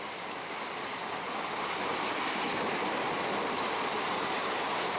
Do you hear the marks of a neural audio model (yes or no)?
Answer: no